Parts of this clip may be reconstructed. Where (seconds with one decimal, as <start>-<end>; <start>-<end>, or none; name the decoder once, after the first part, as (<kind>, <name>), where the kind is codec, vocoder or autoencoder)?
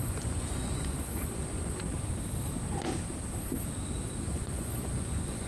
0.0-1.8 (vocoder, Vocos); 4.3-5.5